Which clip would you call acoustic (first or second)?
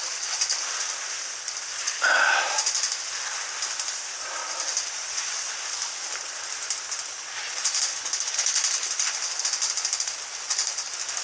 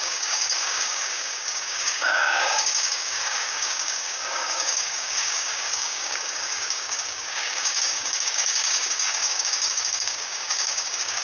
first